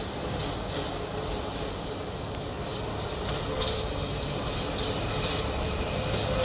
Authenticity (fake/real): real